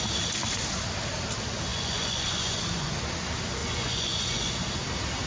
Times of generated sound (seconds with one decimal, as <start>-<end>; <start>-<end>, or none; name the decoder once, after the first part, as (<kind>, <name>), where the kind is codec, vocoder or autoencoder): 1.7-2.9 (vocoder, Vocos); 3.6-4.5